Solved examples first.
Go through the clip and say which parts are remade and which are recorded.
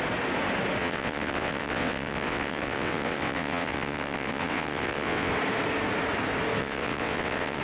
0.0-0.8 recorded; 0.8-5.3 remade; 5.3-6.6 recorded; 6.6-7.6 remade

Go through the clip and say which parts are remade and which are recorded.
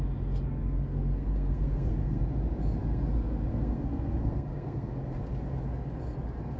0.0-0.5 recorded; 0.5-2.2 remade; 2.2-2.8 recorded; 2.8-4.9 remade; 4.9-6.6 recorded